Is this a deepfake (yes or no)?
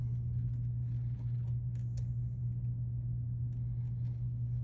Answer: no